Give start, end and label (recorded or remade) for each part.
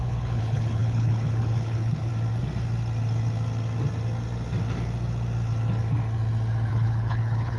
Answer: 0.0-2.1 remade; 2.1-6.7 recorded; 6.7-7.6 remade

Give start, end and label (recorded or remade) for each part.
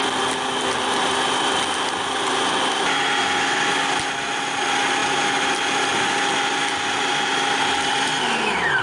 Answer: 0.0-8.8 recorded